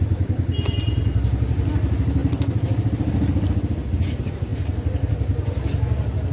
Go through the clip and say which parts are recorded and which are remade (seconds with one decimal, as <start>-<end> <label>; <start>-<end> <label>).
0.0-6.3 recorded